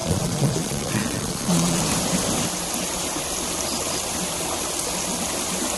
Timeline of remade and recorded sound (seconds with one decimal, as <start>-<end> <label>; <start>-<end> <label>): 0.0-1.8 remade; 1.8-5.8 recorded